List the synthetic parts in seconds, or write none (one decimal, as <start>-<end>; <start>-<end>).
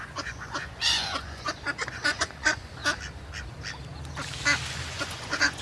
0.0-2.8; 4.7-5.6